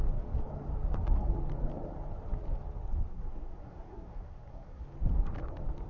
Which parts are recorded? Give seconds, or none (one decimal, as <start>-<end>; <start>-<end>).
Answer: 0.0-3.1; 4.8-5.9